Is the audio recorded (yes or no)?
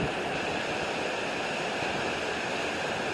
yes